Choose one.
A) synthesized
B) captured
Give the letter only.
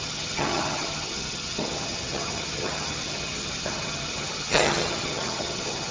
A